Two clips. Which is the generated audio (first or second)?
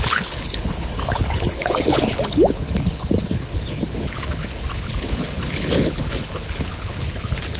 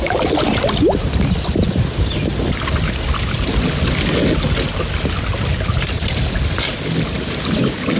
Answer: first